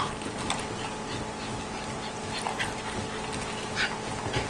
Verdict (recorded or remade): recorded